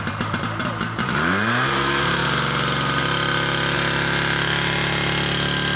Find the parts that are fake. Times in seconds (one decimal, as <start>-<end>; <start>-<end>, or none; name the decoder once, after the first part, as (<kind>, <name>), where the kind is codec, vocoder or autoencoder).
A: 0.0-2.2 (vocoder, BigVGAN v2)